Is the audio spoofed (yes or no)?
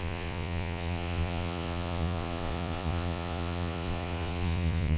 yes